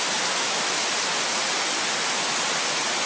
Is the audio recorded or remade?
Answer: recorded